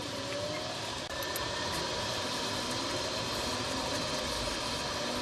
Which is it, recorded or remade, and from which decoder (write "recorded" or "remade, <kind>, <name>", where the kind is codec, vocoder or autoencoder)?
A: remade, vocoder, BigVGAN v2